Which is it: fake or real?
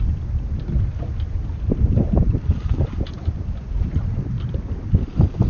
real